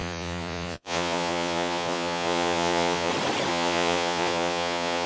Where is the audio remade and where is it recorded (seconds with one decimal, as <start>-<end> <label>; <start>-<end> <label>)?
0.0-3.1 remade; 3.1-3.5 recorded; 3.5-5.1 remade